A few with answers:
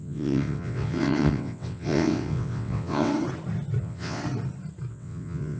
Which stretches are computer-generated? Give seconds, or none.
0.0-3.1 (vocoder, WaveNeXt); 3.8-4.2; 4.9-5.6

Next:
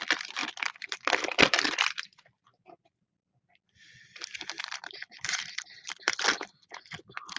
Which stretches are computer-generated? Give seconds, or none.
0.0-7.4 (vocoder, BigVGAN v2)

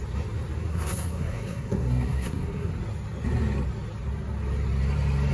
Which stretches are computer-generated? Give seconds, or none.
0.7-2.7 (codec, SNAC)